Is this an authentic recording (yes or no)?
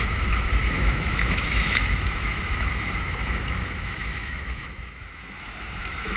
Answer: no